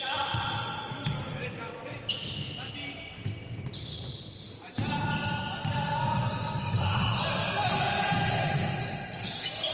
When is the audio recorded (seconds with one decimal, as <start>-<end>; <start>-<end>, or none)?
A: 0.0-6.6; 8.4-9.7